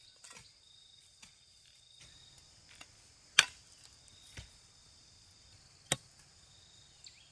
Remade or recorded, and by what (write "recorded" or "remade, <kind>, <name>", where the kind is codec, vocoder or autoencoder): recorded